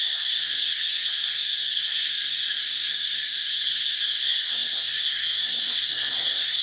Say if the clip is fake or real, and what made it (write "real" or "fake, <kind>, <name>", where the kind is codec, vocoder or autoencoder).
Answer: fake, codec, SNAC